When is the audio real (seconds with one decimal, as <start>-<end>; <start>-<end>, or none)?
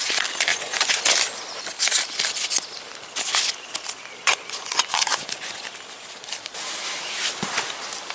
0.0-0.5; 1.0-4.2; 5.6-8.1